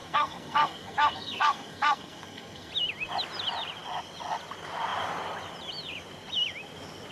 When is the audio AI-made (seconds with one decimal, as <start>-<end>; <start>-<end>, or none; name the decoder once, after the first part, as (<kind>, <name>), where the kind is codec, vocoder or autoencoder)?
0.0-2.7 (codec, SNAC)